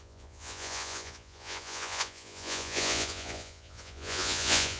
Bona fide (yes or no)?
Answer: no